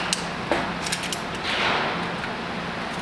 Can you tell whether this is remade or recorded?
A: recorded